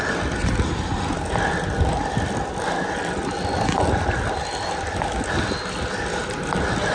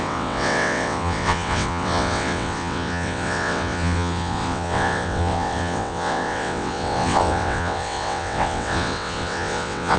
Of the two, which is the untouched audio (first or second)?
first